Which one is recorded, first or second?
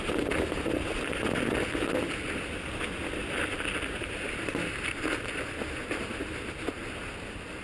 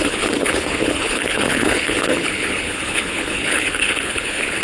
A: first